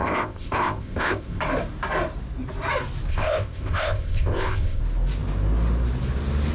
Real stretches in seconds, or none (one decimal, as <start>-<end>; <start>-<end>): 1.4-3.1; 4.8-6.5